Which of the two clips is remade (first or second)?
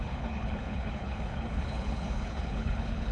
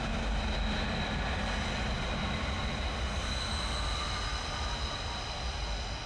first